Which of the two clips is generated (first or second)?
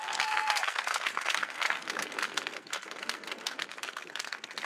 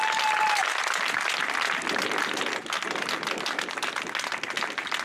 first